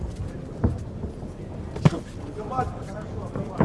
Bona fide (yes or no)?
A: yes